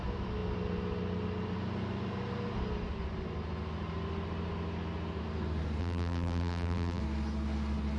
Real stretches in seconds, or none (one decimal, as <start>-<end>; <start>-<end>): 0.0-5.8; 7.0-8.0